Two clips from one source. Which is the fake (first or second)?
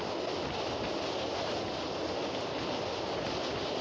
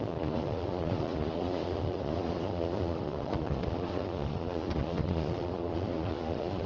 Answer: second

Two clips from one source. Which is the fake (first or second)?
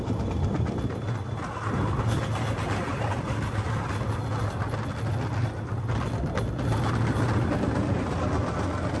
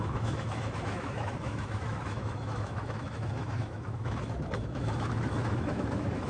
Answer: second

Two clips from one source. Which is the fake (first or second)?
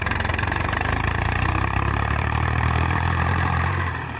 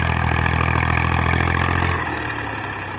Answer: first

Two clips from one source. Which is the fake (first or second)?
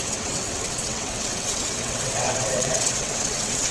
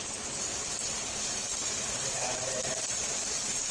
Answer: first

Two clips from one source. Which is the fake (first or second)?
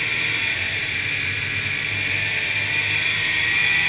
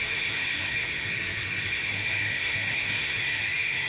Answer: second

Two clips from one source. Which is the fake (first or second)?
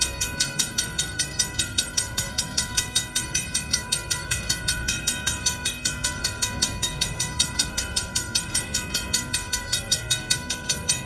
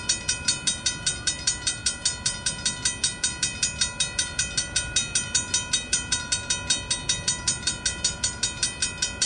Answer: first